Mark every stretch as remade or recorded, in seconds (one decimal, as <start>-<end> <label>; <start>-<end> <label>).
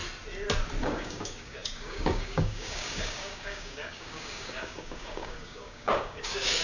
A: 0.0-0.8 recorded; 0.8-6.6 remade